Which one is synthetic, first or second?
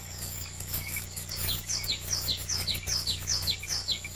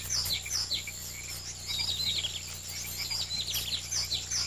first